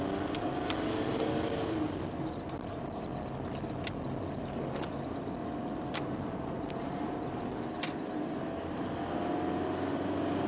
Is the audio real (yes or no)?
yes